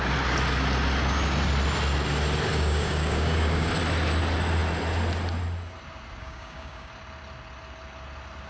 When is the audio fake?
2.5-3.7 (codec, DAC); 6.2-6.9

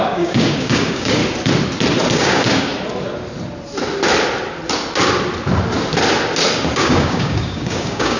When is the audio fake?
0.0-1.2 (codec, DAC); 2.1-2.7; 6.8-8.2

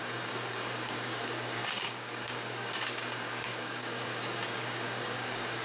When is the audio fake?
0.0-5.6 (codec, DAC)

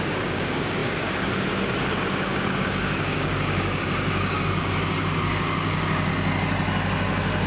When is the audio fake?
0.0-6.1 (codec, DAC)